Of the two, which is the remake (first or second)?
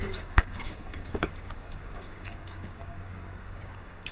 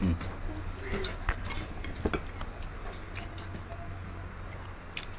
first